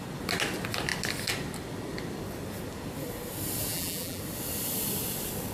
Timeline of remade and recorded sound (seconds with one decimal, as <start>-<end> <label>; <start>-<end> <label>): 0.0-3.7 recorded; 3.7-4.2 remade; 4.2-5.5 recorded